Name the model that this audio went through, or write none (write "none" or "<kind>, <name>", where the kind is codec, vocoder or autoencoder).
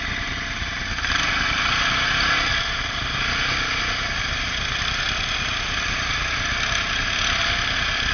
none